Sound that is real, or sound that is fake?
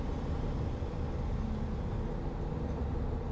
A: real